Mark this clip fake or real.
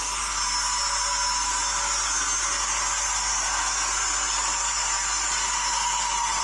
real